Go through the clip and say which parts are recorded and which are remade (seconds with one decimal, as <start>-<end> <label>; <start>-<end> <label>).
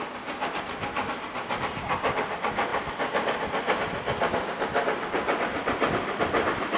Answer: 0.0-6.8 recorded